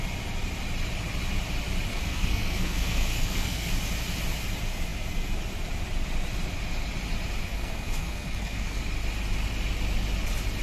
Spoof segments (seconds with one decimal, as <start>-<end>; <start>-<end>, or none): 1.9-3.7; 7.4-8.8